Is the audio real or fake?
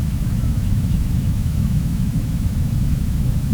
fake